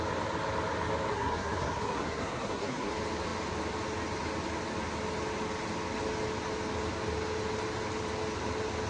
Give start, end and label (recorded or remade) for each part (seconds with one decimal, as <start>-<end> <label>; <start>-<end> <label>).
0.0-1.1 recorded; 1.1-2.9 remade; 2.9-8.9 recorded